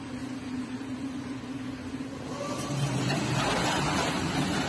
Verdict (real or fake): real